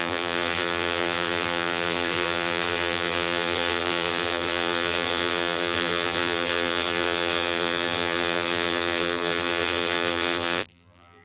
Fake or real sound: fake